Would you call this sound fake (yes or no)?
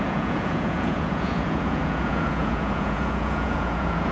yes